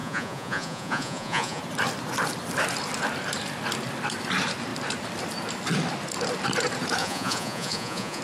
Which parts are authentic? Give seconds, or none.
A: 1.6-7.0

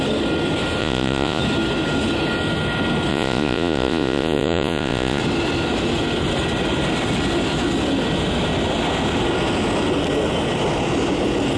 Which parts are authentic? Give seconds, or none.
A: 0.0-0.8; 1.4-3.1; 5.2-11.6